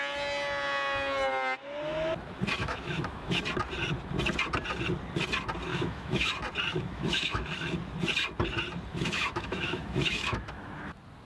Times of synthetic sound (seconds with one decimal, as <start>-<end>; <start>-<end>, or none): 2.6-3.4; 5.7-6.3; 6.7-7.7; 8.9-10.7